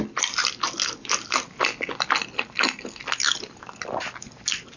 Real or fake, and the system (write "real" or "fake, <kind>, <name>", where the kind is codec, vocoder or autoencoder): real